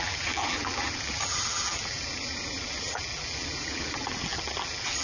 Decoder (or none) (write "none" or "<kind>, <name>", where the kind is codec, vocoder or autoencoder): vocoder, BigVGAN v2